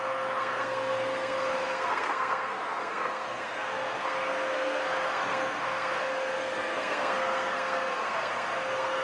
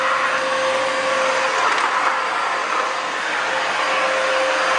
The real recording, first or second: second